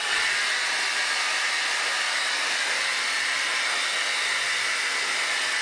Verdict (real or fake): real